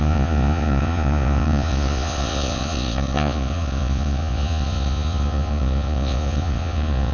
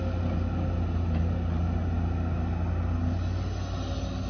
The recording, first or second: second